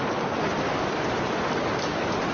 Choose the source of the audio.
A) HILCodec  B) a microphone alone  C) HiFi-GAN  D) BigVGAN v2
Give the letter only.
B